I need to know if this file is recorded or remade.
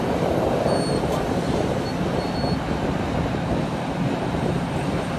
recorded